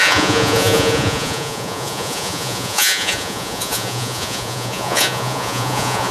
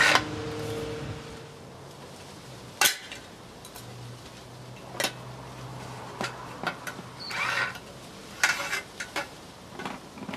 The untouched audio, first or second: second